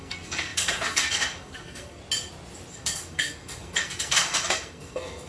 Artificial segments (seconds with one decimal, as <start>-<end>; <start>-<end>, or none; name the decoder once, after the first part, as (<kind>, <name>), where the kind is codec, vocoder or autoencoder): 0.0-2.0 (codec, SNAC); 2.7-5.3